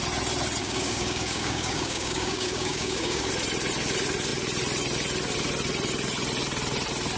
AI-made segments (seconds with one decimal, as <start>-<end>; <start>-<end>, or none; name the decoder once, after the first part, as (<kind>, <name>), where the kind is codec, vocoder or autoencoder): 0.6-3.3 (codec, DAC)